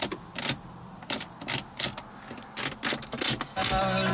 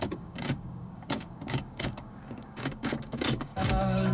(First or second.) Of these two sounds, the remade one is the second